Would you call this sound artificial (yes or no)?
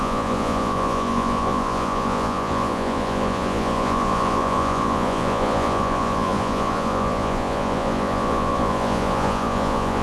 yes